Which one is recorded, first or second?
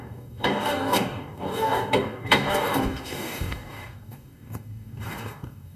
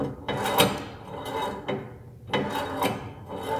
second